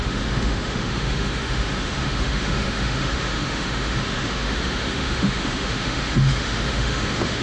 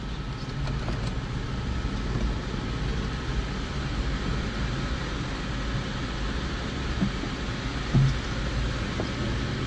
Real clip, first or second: second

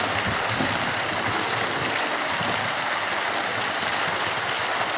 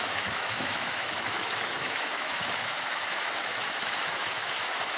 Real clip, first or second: first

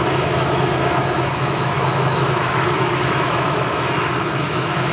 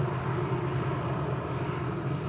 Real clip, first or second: second